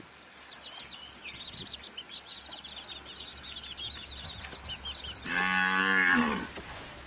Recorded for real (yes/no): yes